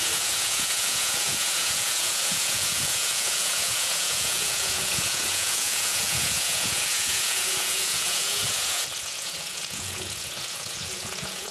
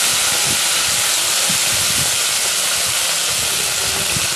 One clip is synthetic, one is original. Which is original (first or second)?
second